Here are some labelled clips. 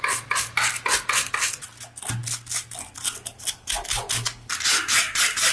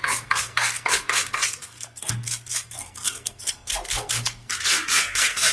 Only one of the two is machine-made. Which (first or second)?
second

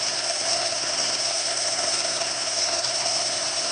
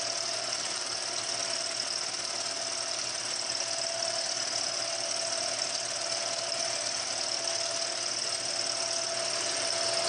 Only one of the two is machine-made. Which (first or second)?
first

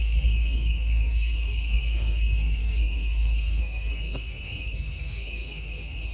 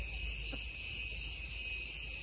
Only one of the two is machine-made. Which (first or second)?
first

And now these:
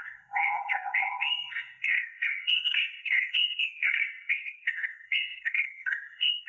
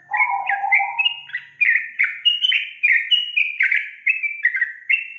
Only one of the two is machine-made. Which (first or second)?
first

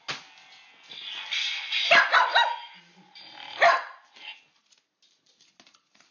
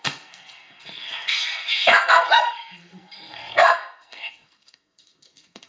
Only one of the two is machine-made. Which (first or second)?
second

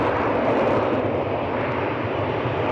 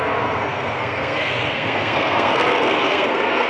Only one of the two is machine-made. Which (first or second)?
second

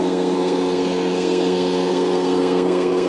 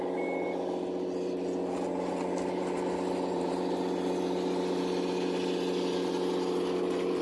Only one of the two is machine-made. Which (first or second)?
first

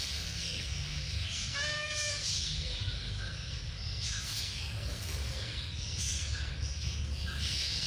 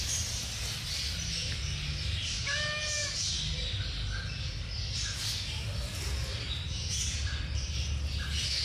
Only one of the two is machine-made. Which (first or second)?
first